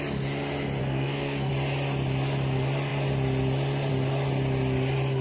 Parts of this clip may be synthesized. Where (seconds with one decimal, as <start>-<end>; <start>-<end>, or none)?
0.8-1.5